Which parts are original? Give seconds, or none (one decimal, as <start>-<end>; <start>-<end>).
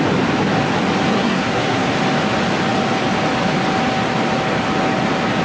0.0-1.1; 1.9-5.4